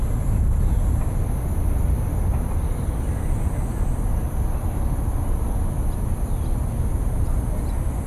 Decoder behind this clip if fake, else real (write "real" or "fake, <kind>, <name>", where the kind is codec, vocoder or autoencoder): real